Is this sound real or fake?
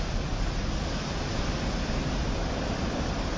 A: real